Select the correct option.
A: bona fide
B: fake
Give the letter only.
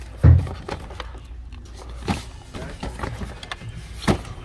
A